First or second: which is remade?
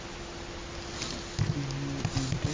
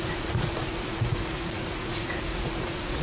second